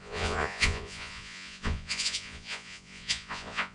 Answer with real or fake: fake